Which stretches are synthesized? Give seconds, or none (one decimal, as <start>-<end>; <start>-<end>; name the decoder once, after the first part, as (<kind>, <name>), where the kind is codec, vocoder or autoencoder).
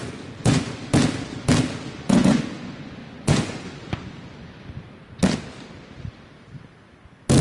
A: 0.0-0.8 (vocoder, Vocos); 2.0-4.6